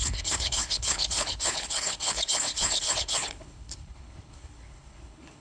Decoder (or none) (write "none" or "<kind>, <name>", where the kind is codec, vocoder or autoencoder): codec, HILCodec